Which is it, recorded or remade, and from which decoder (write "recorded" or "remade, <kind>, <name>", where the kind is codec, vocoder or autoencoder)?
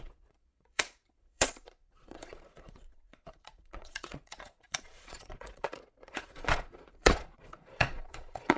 remade, vocoder, Vocos